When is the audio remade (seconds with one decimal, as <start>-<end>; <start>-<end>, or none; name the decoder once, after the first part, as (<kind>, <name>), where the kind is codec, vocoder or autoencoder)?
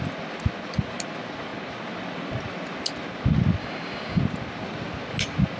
3.6-4.2 (codec, DAC)